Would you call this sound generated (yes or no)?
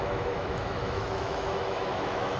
yes